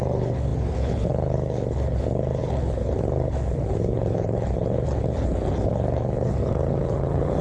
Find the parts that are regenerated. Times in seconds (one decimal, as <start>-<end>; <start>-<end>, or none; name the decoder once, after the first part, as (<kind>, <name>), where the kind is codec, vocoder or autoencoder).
0.0-7.4 (codec, HILCodec)